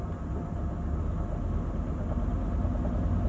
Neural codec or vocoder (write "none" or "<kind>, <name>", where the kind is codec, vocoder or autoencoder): none